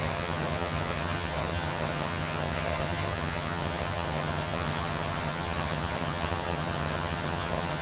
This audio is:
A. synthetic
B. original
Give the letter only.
A